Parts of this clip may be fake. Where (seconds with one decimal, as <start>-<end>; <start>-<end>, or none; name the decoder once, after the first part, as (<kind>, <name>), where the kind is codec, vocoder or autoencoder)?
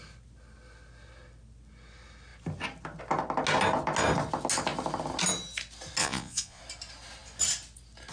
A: 6.0-6.6 (vocoder, Vocos)